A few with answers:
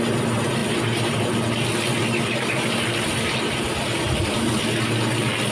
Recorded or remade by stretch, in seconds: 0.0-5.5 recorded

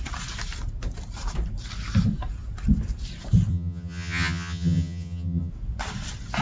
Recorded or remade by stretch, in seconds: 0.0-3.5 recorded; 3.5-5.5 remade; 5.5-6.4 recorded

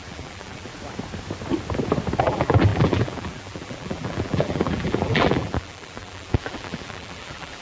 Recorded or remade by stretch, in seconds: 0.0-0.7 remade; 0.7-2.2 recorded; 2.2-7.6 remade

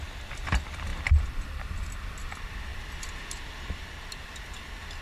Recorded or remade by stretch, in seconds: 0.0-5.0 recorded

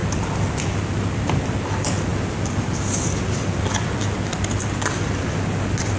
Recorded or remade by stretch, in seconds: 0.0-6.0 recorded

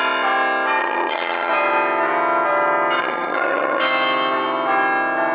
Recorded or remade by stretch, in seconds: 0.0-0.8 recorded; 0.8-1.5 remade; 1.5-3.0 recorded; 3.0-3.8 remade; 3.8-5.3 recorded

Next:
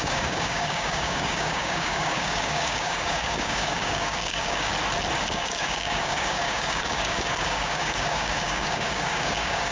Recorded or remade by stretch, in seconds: 0.0-4.7 remade; 4.7-5.2 recorded; 5.2-9.7 remade

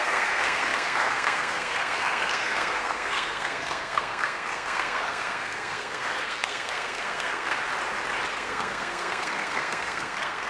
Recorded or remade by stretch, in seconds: 0.0-7.6 remade; 7.6-8.3 recorded; 8.3-10.5 remade